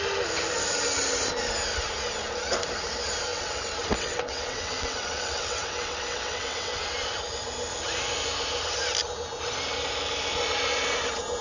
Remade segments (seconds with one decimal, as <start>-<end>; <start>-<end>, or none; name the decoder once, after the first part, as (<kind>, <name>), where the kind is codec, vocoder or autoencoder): 3.3-7.0 (vocoder, WaveNeXt)